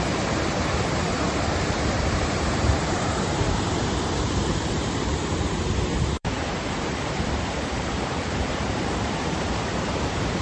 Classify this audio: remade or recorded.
remade